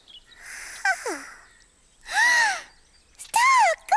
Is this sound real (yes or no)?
yes